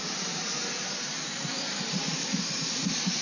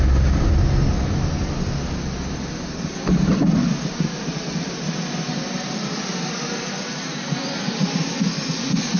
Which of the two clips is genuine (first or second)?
second